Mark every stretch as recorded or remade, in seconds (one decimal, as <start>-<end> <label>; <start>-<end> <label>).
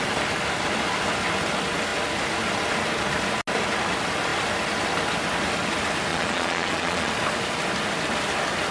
0.0-6.1 recorded; 6.1-7.1 remade; 7.1-8.7 recorded